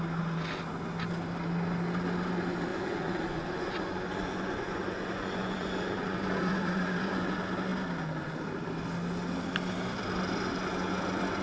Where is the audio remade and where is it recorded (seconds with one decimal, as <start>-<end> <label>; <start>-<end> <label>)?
0.0-2.7 recorded; 2.7-7.3 remade; 7.3-11.4 recorded